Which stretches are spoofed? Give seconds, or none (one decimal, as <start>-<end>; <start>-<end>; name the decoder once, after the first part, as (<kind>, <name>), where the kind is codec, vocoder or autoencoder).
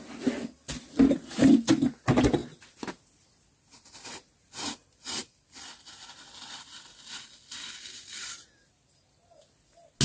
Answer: 0.8-1.7 (vocoder, BigVGAN v2); 4.8-5.9